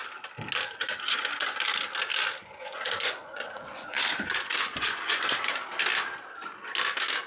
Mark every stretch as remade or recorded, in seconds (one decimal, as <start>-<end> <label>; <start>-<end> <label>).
0.0-2.4 recorded; 2.4-5.2 remade; 5.2-7.3 recorded